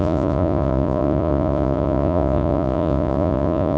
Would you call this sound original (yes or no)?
no